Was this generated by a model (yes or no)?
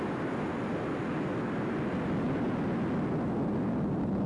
no